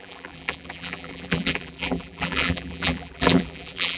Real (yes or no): no